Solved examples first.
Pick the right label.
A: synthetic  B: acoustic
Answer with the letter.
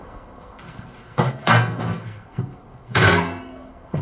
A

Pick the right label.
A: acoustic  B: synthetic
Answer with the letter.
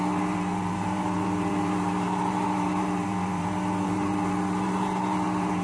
B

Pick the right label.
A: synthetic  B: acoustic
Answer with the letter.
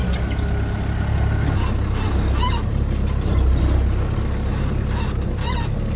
B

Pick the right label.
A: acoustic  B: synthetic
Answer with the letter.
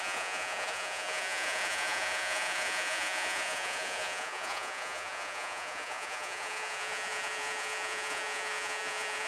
B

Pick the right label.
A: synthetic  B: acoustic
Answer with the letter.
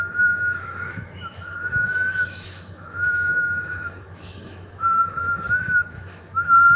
A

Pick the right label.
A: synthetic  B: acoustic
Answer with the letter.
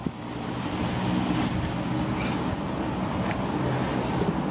B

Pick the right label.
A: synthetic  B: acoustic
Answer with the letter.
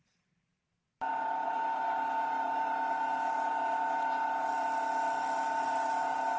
B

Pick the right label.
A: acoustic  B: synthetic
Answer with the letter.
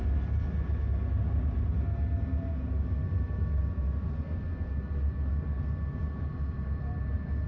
A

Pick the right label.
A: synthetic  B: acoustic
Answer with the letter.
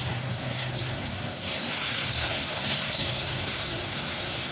A